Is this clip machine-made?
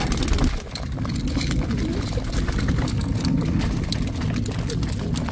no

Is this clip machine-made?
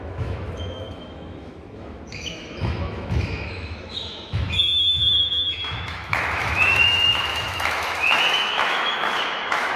yes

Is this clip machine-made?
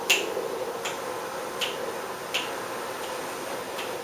no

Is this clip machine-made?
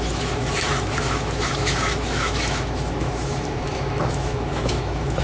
yes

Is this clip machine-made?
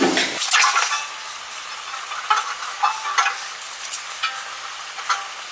no